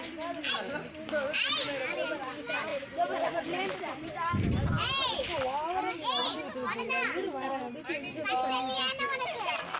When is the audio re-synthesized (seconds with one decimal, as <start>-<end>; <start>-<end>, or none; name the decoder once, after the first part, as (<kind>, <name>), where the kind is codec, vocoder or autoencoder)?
2.7-4.1 (vocoder, BigVGAN v2)